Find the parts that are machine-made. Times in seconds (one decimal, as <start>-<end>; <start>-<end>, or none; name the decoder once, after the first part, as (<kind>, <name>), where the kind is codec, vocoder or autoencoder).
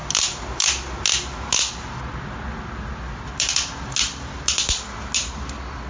none